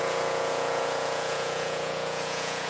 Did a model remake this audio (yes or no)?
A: yes